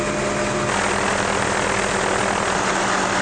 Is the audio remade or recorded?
recorded